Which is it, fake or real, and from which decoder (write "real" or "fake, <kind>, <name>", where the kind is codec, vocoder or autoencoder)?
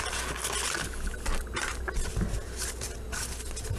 real